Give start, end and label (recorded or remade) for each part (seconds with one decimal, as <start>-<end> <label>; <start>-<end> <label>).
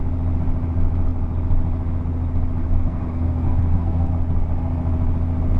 0.0-2.6 recorded; 2.6-4.1 remade; 4.1-5.6 recorded